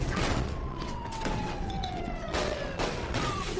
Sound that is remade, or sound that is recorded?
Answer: remade